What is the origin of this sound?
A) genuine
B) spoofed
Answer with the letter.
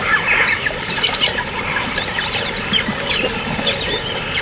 A